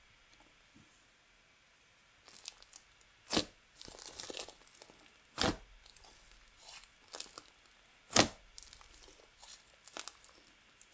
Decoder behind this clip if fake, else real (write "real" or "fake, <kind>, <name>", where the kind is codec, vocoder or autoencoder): real